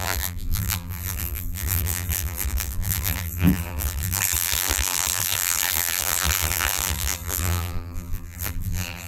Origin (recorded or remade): remade